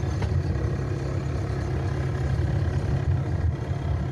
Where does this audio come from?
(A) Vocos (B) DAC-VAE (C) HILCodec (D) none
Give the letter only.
D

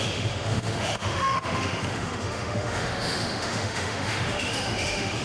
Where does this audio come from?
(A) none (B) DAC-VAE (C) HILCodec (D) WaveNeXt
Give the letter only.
B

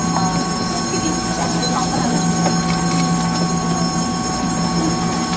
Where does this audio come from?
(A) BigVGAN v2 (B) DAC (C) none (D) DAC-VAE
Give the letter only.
C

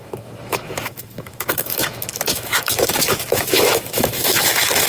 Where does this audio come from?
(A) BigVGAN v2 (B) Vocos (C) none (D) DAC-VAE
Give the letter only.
D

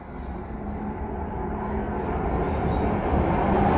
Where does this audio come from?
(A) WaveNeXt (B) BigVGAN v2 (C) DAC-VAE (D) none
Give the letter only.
D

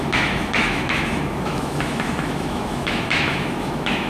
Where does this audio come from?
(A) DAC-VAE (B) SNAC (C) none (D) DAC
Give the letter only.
A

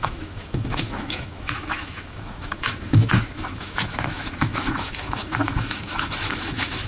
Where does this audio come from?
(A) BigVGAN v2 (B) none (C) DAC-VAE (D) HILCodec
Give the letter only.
C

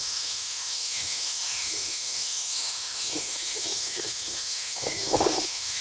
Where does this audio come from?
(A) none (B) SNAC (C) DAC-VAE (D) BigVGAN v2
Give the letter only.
C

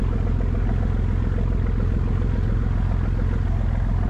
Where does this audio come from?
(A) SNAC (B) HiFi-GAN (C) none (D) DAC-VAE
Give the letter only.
C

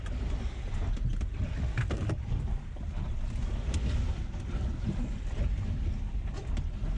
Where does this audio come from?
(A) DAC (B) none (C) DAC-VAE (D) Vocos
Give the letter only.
B